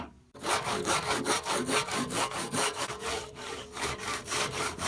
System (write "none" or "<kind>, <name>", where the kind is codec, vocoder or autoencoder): codec, DAC